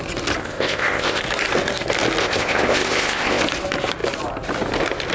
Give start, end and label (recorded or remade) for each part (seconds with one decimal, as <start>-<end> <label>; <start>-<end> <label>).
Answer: 0.0-0.4 recorded; 0.4-1.2 remade; 1.2-2.2 recorded; 2.2-3.4 remade; 3.4-5.1 recorded